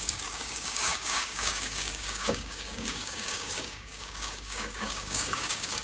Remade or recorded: remade